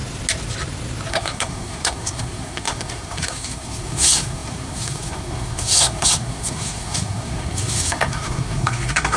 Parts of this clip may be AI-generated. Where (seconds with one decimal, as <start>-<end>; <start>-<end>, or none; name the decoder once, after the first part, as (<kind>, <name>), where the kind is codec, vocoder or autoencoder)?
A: 1.1-9.2 (codec, SNAC)